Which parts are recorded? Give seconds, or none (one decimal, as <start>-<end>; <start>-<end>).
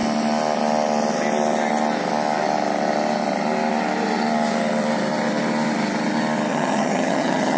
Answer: 0.0-6.5